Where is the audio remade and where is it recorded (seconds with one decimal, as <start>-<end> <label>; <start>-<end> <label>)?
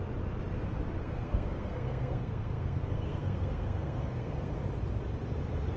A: 0.0-1.0 recorded; 1.0-4.5 remade; 4.5-5.8 recorded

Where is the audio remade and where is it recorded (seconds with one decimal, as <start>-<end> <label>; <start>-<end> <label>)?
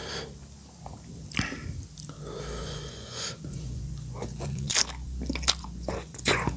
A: 0.0-2.6 recorded; 2.6-4.7 remade; 4.7-5.6 recorded; 5.6-6.6 remade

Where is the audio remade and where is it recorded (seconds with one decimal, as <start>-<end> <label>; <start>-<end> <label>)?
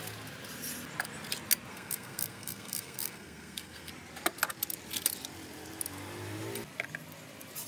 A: 0.0-1.7 recorded; 1.7-3.9 remade; 3.9-7.7 recorded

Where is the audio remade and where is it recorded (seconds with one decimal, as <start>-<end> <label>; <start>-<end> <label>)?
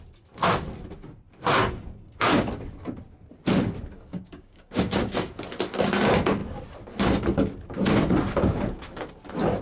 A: 0.0-4.1 recorded; 4.1-5.3 remade; 5.3-8.4 recorded; 8.4-9.1 remade; 9.1-9.6 recorded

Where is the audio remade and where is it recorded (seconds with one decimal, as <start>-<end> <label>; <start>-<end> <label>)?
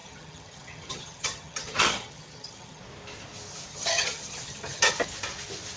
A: 0.0-2.8 remade; 2.8-3.7 recorded; 3.7-4.9 remade; 4.9-5.8 recorded